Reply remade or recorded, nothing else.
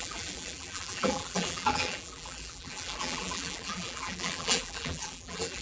remade